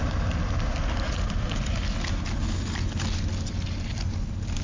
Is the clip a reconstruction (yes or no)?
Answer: no